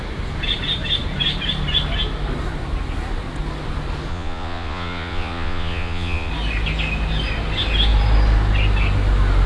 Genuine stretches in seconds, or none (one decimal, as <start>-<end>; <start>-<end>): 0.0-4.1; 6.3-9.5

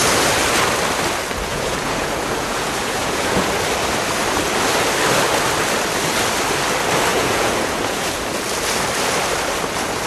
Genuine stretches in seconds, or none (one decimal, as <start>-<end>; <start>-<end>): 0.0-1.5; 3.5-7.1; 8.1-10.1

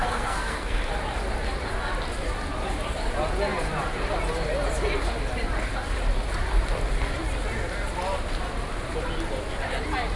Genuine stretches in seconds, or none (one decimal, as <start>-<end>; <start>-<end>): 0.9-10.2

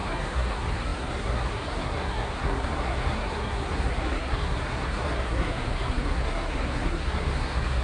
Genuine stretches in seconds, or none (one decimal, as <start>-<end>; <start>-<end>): none